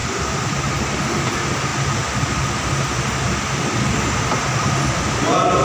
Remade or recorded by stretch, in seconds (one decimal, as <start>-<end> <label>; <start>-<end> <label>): 0.0-5.6 remade